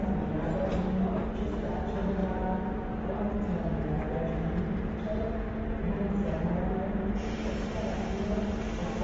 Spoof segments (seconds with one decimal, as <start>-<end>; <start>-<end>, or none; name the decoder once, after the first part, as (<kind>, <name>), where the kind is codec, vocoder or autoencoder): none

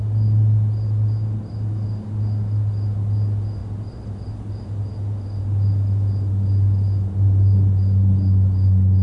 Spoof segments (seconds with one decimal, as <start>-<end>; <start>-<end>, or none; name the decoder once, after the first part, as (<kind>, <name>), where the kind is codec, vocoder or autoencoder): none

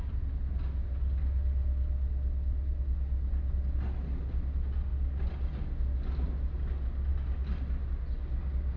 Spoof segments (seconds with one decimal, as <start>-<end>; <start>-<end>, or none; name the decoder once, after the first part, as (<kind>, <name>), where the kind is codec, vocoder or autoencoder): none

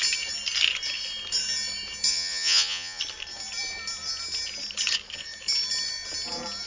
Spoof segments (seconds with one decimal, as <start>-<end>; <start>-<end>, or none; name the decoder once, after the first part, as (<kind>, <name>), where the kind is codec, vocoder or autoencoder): 2.1-3.0 (vocoder, Vocos)

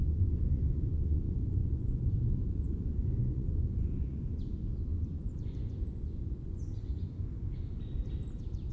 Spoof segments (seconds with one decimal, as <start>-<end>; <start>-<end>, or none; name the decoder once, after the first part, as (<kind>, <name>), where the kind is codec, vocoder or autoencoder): 0.0-7.9 (vocoder, Vocos)